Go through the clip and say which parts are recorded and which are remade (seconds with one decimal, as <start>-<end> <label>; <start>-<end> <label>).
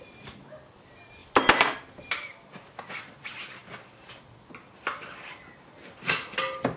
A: 0.0-6.8 recorded